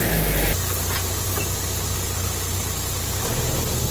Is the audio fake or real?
real